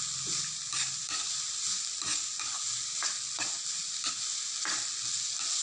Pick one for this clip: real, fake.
real